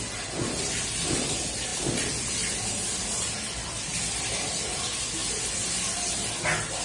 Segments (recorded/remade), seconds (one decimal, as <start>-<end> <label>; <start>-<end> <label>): 0.0-6.8 recorded